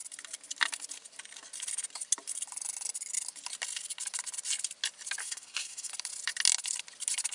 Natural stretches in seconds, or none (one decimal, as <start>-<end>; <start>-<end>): 0.0-5.2; 5.9-7.3